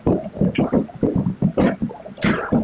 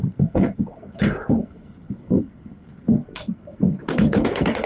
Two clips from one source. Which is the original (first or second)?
first